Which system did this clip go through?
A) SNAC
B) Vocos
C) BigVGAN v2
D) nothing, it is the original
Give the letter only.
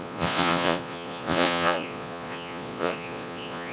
B